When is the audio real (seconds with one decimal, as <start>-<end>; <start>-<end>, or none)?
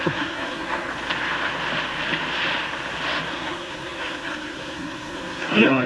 0.9-3.3